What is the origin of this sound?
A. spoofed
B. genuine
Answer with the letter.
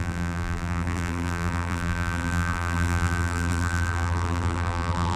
A